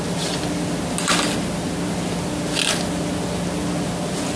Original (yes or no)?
yes